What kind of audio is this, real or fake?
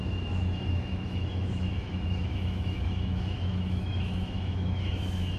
fake